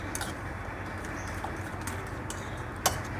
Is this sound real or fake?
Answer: real